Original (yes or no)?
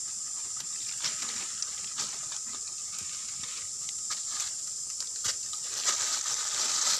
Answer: yes